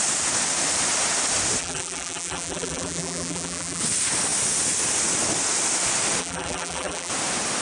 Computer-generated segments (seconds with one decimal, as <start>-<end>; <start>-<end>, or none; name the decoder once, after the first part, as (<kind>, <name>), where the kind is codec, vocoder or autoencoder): 1.6-3.8 (vocoder, BigVGAN v2); 6.2-7.1